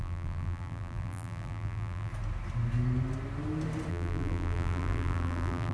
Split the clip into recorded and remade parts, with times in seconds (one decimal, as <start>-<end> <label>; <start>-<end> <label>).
0.0-2.1 remade; 2.1-3.9 recorded; 3.9-5.7 remade